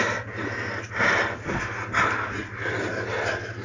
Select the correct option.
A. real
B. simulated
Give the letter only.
A